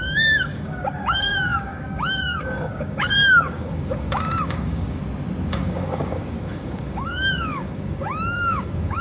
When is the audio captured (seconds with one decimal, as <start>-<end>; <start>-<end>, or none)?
5.0-5.5